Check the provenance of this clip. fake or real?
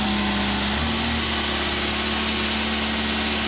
real